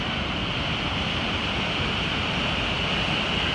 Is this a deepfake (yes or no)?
no